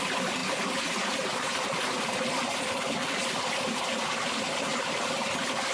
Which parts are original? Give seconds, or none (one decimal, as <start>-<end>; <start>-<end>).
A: 0.0-4.7; 5.2-5.7